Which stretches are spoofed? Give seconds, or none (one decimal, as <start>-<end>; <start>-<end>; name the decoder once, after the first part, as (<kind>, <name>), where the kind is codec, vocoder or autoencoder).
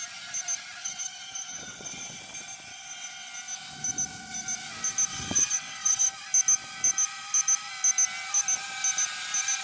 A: 0.8-2.2 (vocoder, WaveNeXt); 2.7-3.3; 5.1-6.1